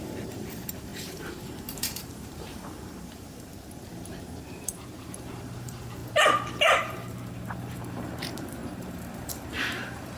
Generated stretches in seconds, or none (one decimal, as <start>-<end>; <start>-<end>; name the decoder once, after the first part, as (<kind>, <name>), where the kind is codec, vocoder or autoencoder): 0.0-3.5 (vocoder, BigVGAN v2); 4.5-6.0; 6.6-10.2